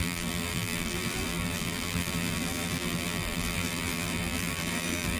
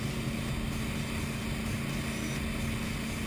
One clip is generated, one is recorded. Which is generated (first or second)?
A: first